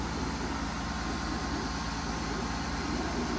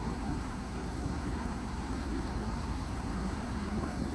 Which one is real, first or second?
first